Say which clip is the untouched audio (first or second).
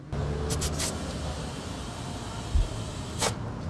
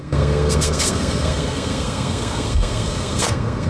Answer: first